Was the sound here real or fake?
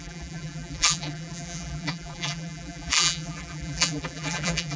fake